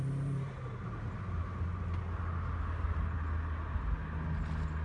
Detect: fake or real real